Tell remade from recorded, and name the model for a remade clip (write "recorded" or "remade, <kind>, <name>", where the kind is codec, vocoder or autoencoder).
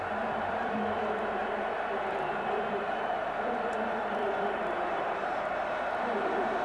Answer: remade, vocoder, BigVGAN v2